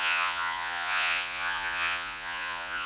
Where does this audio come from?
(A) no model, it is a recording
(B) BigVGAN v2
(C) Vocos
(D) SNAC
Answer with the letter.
C